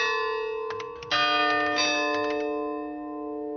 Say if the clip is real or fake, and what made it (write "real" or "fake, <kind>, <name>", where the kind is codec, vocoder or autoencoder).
real